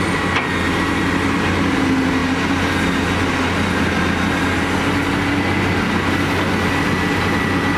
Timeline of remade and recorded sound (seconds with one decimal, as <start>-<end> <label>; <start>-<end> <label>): 0.0-7.8 recorded